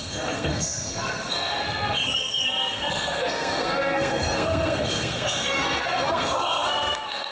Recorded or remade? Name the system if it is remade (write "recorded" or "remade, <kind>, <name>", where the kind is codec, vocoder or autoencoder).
remade, codec, SNAC